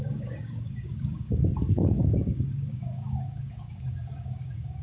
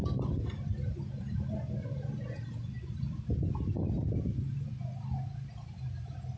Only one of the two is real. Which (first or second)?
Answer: second